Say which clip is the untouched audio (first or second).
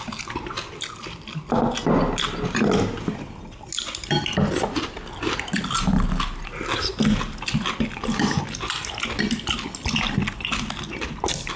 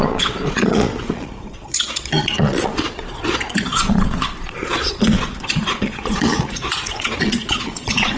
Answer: first